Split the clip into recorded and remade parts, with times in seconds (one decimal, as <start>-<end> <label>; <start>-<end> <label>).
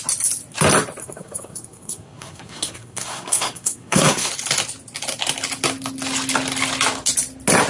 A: 0.0-1.0 recorded; 1.0-4.3 remade; 4.3-7.7 recorded